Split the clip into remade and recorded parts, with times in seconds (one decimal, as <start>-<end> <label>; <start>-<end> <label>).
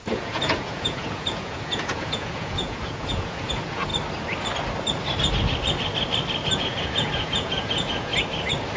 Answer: 0.0-3.9 remade; 3.9-6.5 recorded; 6.5-8.1 remade; 8.1-8.8 recorded